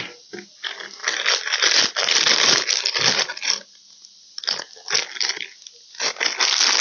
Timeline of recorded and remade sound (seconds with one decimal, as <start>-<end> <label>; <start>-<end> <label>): 0.0-1.0 recorded; 1.0-1.6 remade; 1.6-6.8 recorded